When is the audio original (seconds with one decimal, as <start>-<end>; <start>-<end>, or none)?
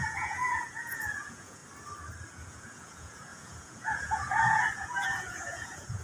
1.6-2.3